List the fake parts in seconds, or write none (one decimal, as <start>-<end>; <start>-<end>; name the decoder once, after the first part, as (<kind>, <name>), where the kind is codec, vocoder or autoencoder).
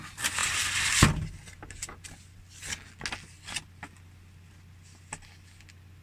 none